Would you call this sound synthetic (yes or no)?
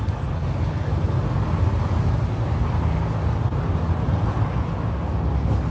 no